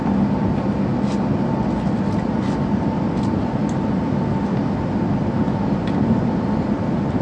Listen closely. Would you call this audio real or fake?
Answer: real